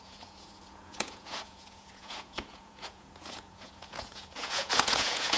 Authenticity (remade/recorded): remade